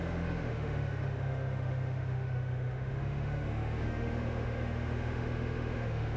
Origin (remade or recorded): remade